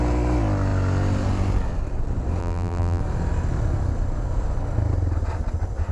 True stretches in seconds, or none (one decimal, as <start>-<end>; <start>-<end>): 0.0-2.4; 3.0-5.9